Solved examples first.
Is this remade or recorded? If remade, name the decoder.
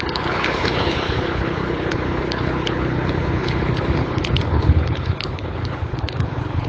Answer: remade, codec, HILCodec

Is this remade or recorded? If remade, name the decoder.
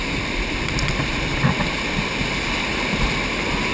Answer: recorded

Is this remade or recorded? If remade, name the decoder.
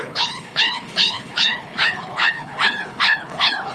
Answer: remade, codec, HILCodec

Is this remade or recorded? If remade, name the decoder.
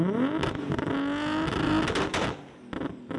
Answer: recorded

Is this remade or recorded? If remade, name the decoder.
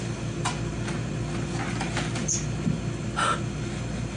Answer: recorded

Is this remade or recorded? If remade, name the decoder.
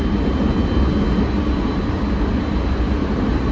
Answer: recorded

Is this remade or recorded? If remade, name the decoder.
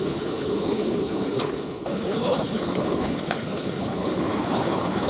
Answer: remade, codec, HILCodec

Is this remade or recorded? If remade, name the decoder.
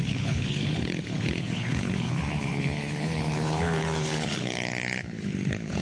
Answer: remade, codec, HILCodec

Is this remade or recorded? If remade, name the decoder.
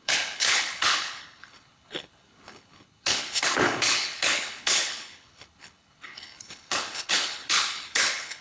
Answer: remade, codec, HILCodec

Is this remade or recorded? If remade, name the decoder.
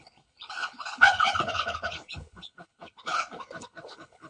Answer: remade, codec, HILCodec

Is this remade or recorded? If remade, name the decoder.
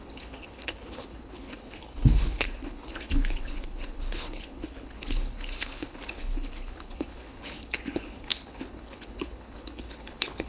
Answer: remade, codec, HILCodec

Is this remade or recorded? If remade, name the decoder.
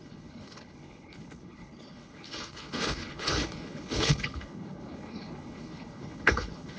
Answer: remade, codec, HILCodec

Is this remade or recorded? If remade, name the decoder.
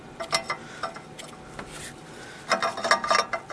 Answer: recorded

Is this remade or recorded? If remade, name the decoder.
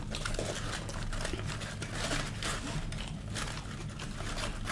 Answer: recorded